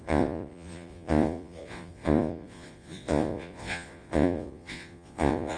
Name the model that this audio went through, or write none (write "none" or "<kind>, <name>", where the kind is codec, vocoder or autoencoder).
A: vocoder, Vocos